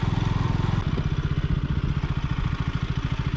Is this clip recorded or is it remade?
recorded